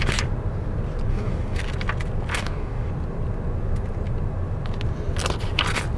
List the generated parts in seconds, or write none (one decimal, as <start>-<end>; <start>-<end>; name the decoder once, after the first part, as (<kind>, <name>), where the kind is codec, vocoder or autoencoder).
1.1-1.6 (codec, DAC); 2.3-2.9